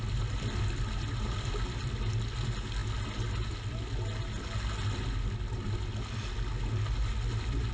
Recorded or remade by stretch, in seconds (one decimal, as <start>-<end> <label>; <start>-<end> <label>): 0.0-7.7 recorded